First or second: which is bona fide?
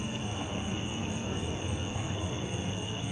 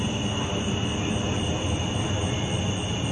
second